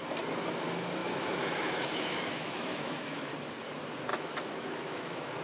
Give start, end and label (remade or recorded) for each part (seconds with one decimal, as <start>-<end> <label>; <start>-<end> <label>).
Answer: 0.0-1.0 recorded; 1.0-3.3 remade; 3.3-4.1 recorded; 4.1-5.4 remade